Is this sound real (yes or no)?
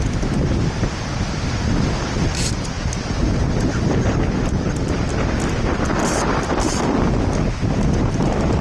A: yes